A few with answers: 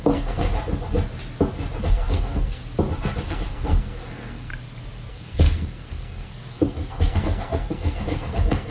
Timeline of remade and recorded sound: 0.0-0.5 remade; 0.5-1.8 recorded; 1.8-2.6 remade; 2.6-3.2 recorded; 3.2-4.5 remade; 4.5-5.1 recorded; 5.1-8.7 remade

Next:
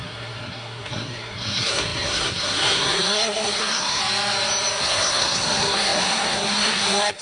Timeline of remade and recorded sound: 0.0-4.0 remade; 4.0-4.8 recorded; 4.8-7.2 remade

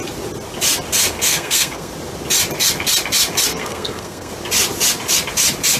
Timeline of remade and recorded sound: 0.0-1.0 recorded; 1.0-1.9 remade; 1.9-3.5 recorded; 3.5-4.3 remade; 4.3-5.8 recorded